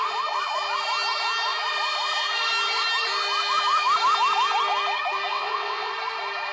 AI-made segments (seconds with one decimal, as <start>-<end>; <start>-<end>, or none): 5.3-5.9